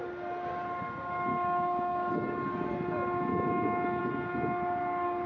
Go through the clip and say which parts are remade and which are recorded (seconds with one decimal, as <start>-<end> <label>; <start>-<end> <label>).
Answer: 0.0-1.3 recorded; 1.3-2.1 remade; 2.1-3.3 recorded; 3.3-4.0 remade; 4.0-5.3 recorded